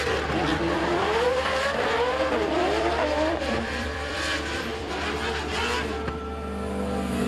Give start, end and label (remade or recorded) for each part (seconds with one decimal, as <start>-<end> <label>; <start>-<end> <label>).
0.0-0.5 recorded; 0.5-4.9 remade; 4.9-7.3 recorded